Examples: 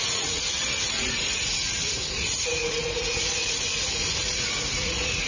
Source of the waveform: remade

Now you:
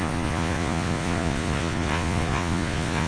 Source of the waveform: remade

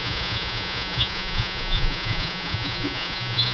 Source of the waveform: remade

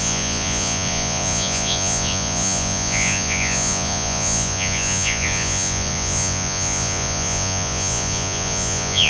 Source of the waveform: remade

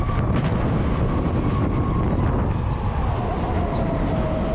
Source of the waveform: recorded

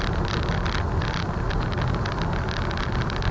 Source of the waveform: recorded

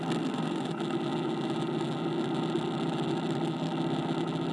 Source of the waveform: recorded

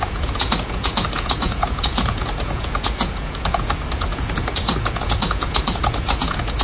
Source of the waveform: remade